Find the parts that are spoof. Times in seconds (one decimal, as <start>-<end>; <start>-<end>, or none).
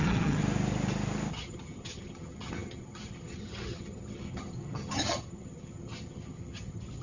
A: 0.0-0.4; 1.3-7.0